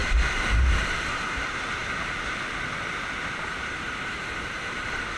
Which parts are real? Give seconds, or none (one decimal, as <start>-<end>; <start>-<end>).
0.0-1.0; 1.8-2.9